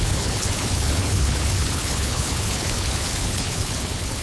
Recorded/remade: remade